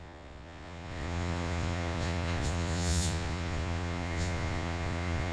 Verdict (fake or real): fake